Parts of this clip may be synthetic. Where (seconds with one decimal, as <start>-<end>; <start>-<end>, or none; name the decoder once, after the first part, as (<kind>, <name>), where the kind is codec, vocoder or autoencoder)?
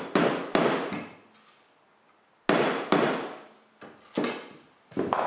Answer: none